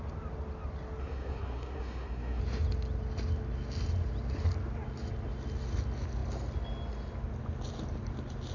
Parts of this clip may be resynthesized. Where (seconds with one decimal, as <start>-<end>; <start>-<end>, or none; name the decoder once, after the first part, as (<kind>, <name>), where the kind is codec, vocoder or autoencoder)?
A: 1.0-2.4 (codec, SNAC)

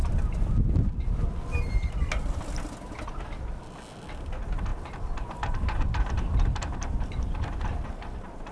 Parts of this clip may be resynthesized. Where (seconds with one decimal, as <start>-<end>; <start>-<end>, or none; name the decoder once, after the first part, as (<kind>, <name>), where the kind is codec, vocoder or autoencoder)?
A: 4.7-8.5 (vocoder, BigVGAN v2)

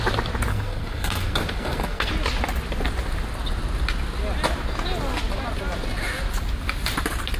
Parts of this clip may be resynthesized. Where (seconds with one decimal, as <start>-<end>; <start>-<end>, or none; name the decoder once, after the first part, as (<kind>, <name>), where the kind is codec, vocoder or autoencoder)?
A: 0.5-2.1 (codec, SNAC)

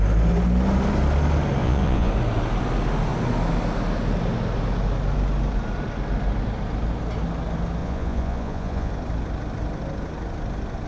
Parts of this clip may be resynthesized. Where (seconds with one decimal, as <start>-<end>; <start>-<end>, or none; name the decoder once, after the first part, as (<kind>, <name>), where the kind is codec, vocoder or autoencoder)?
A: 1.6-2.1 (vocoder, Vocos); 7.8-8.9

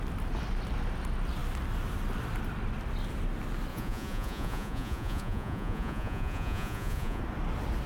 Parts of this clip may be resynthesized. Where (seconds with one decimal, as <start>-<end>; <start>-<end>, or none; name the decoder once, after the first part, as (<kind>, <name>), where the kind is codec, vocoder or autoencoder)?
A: 3.7-7.2 (vocoder, Vocos)

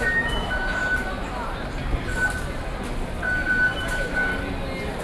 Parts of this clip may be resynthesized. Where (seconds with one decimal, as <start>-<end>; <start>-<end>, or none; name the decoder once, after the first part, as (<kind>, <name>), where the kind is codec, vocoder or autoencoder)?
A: 0.0-0.8 (autoencoder, DAC-VAE); 3.8-4.3

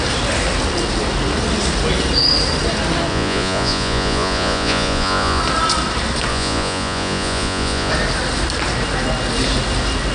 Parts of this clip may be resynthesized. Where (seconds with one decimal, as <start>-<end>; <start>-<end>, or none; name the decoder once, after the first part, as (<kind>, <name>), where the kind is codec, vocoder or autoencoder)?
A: 3.1-5.4 (vocoder, Vocos); 6.3-7.9

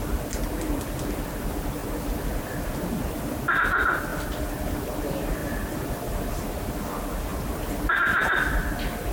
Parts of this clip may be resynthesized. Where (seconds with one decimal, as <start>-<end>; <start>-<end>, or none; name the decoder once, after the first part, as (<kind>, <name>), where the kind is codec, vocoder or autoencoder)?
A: none